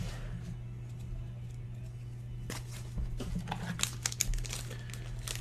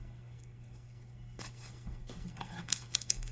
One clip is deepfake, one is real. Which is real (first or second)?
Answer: first